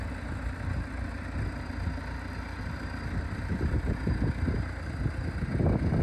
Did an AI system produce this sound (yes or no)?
no